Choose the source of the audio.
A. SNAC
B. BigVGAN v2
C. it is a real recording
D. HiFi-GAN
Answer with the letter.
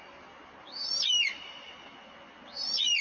C